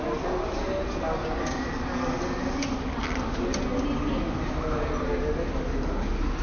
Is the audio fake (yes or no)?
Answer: no